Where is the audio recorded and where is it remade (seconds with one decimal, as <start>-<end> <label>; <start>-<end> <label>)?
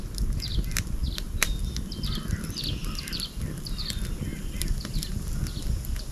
0.0-1.0 recorded; 1.0-1.6 remade; 1.6-2.8 recorded; 2.8-3.9 remade; 3.9-4.3 recorded; 4.3-5.1 remade; 5.1-6.1 recorded